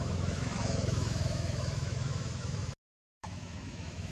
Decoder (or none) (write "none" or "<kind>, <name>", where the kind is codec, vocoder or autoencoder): autoencoder, DAC-VAE